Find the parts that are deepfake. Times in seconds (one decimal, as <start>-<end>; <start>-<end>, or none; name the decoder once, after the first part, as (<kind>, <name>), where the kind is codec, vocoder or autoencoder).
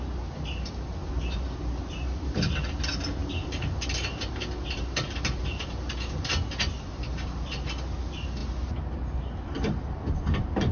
none